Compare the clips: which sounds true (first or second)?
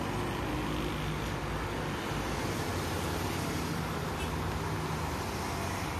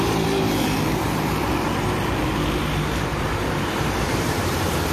first